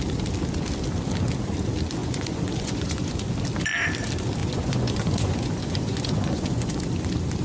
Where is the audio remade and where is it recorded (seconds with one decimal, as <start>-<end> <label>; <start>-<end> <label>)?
0.0-2.0 recorded; 2.0-3.3 remade; 3.3-4.4 recorded; 4.4-6.8 remade; 6.8-7.4 recorded